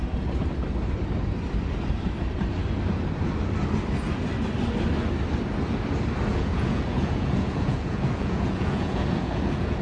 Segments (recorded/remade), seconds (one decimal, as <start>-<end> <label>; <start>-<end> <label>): 0.0-6.3 recorded; 6.3-9.8 remade